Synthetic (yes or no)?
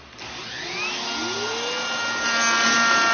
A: no